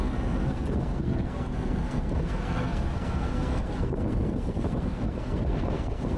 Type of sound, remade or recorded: remade